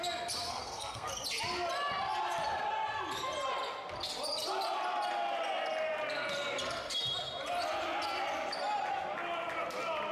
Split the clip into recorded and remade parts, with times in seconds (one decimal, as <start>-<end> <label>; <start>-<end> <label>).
0.0-0.5 recorded; 0.5-1.1 remade; 1.1-10.1 recorded